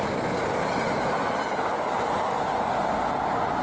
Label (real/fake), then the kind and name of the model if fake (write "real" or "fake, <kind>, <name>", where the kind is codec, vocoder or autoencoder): real